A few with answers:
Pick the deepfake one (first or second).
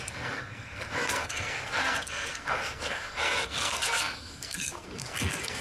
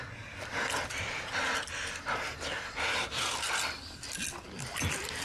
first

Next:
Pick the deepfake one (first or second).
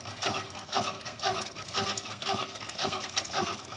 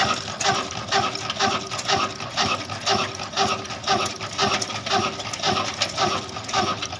first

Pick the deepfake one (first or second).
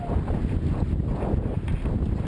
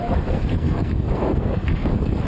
second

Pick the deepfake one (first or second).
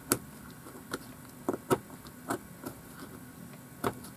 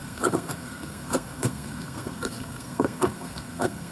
second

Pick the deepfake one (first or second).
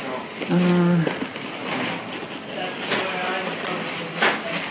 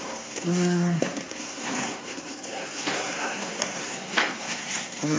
second